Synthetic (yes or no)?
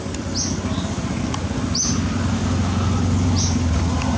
no